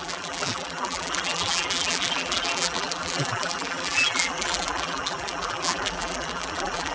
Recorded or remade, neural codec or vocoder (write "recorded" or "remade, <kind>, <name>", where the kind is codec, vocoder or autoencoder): remade, vocoder, BigVGAN v2